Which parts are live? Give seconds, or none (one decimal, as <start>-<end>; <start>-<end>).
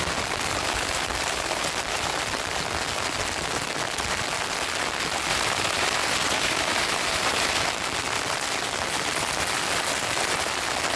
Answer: 0.0-5.3; 7.7-11.0